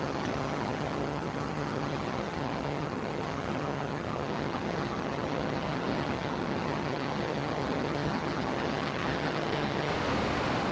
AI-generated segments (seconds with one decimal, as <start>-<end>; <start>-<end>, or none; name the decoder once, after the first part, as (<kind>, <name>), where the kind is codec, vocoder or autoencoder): 0.0-9.9 (vocoder, HiFi-GAN)